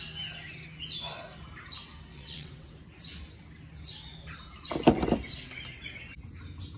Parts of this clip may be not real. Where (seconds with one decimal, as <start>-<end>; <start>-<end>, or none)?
2.1-2.7